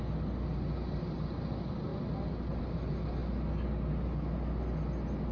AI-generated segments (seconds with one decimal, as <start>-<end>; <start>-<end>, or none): none